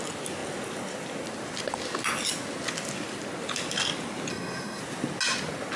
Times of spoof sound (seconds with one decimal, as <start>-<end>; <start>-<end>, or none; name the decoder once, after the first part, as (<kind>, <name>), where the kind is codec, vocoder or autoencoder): 4.3-4.8 (codec, SNAC)